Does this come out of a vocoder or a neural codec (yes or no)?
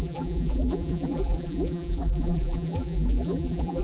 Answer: yes